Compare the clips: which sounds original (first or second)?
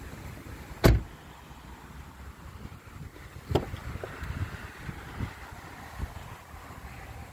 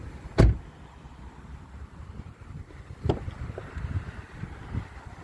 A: first